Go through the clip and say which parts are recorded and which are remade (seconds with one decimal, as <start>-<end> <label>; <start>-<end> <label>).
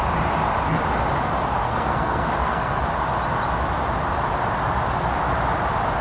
0.0-1.6 recorded; 1.6-2.8 remade; 2.8-6.0 recorded